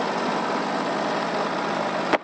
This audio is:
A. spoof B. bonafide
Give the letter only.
B